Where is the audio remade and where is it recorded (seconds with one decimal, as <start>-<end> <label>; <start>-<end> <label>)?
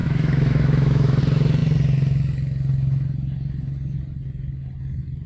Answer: 0.0-1.2 remade; 1.2-5.3 recorded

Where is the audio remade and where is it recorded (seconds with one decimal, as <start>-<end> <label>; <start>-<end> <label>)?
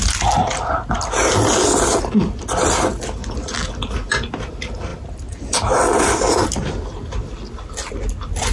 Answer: 0.0-8.5 recorded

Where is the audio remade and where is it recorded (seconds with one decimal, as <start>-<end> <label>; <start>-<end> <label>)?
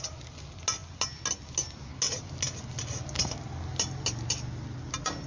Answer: 0.0-5.3 recorded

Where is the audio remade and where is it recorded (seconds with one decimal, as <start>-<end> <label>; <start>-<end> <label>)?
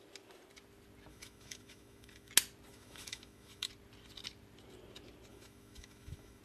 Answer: 0.0-1.1 recorded; 1.1-2.3 remade; 2.3-2.7 recorded; 2.7-3.7 remade; 3.7-5.3 recorded; 5.3-6.4 remade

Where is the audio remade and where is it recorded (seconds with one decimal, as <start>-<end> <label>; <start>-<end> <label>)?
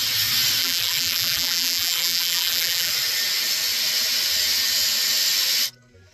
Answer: 0.0-0.6 recorded; 0.6-2.9 remade; 2.9-6.1 recorded